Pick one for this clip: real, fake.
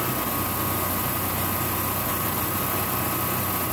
real